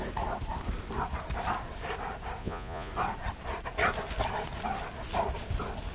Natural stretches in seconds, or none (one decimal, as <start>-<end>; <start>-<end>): 0.0-2.4; 2.9-5.9